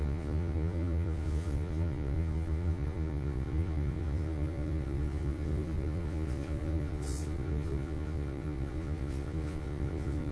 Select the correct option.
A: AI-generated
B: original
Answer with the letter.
A